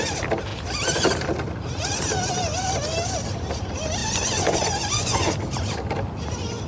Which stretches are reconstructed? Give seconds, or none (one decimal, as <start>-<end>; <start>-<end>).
4.0-5.3